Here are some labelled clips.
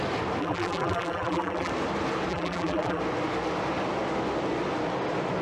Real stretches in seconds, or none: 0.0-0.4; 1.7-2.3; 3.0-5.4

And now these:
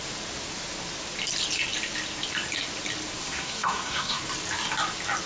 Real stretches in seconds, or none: 0.0-3.2; 4.2-5.3

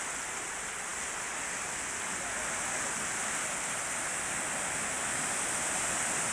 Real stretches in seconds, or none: 0.0-6.3